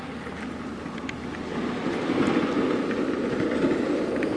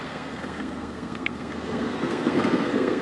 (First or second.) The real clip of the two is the first